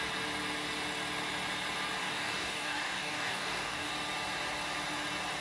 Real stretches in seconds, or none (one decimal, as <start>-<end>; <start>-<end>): 0.0-2.0; 3.9-5.4